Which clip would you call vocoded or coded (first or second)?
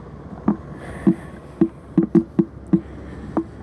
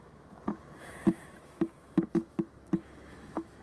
second